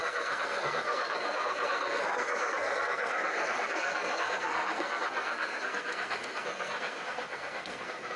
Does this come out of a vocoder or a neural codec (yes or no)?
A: yes